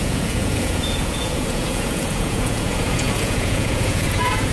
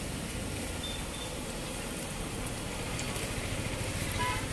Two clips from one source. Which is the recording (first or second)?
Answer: second